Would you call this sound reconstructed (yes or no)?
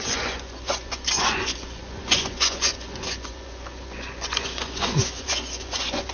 yes